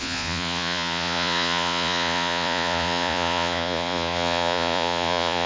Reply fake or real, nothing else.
fake